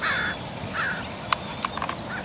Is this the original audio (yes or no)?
yes